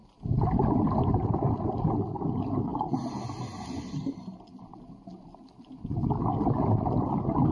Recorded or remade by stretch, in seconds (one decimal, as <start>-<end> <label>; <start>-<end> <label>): 0.0-7.5 recorded